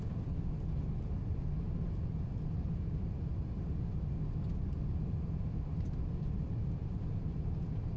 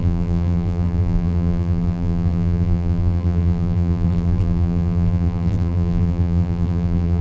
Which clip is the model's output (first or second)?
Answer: second